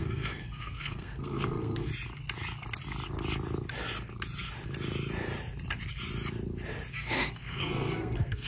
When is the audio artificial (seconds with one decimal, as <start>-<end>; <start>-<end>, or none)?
0.0-1.9; 6.9-8.5